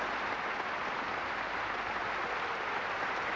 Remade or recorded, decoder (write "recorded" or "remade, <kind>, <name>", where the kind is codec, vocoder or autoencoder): recorded